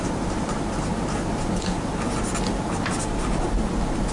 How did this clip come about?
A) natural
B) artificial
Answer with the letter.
A